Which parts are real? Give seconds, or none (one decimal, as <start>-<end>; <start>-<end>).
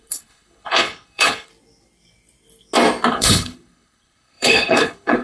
1.5-3.1